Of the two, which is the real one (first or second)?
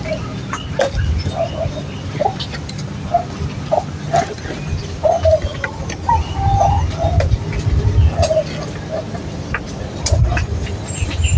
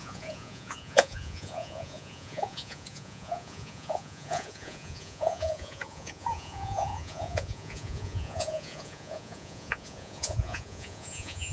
first